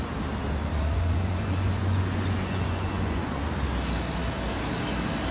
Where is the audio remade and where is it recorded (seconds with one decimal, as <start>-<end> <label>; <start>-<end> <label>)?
0.0-0.7 recorded; 0.7-3.5 remade; 3.5-5.3 recorded